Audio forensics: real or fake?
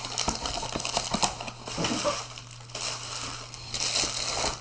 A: real